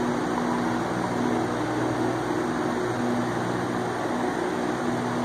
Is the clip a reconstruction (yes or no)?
no